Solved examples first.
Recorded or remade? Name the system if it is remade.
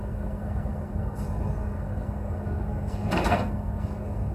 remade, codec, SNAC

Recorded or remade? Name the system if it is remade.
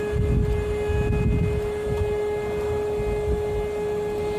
recorded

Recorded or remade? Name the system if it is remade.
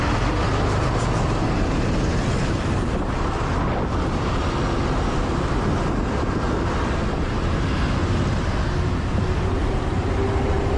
recorded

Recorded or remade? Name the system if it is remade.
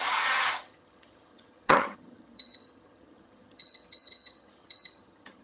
remade, vocoder, HiFi-GAN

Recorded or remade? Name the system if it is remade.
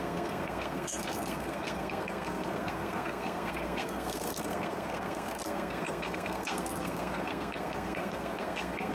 remade, codec, SNAC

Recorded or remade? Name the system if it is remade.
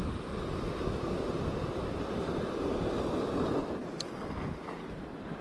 recorded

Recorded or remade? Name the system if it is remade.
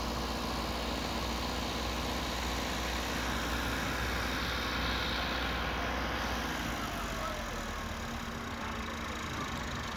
recorded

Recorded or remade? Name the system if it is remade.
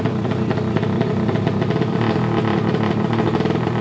recorded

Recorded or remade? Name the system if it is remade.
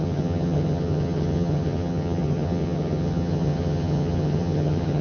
remade, vocoder, HiFi-GAN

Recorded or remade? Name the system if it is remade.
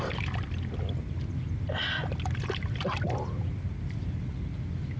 recorded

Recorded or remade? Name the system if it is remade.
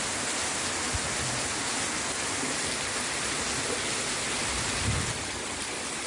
recorded